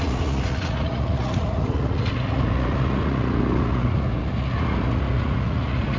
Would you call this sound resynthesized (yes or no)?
yes